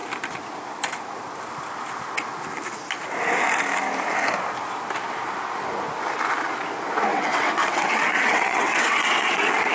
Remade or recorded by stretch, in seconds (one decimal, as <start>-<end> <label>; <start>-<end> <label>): 0.0-7.1 recorded; 7.1-9.7 remade